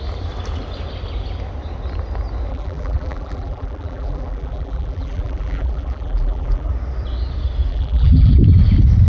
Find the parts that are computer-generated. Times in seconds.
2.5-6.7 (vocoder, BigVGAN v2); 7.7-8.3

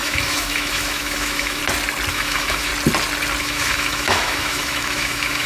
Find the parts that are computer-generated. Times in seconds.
0.0-1.6 (autoencoder, DAC-VAE); 2.1-2.7; 3.4-5.5

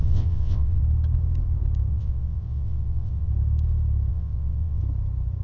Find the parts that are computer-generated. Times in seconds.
0.0-0.8 (vocoder, WaveNeXt); 1.9-3.3; 4.1-4.8

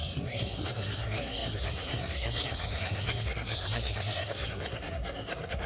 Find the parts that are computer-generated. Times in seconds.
0.0-5.7 (codec, SNAC)

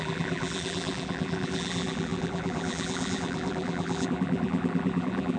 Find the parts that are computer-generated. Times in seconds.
0.0-5.4 (vocoder, BigVGAN v2)

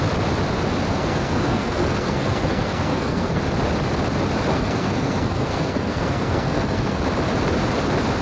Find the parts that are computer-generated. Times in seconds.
0.9-3.4 (codec, SNAC); 4.5-7.0